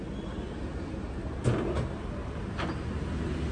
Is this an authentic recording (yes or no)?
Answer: yes